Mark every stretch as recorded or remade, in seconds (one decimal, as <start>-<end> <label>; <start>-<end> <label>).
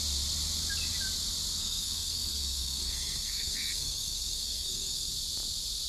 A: 0.0-1.6 recorded; 1.6-5.1 remade; 5.1-5.9 recorded